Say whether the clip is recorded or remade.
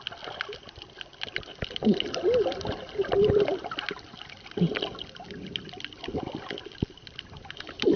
recorded